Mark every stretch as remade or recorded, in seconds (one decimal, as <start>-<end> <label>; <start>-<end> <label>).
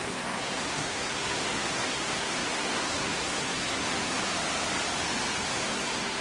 0.0-4.2 remade; 4.2-5.5 recorded; 5.5-6.2 remade